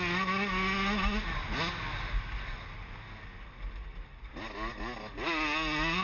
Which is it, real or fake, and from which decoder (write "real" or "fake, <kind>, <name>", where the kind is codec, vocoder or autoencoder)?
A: real